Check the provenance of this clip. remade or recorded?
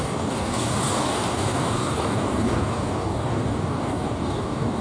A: remade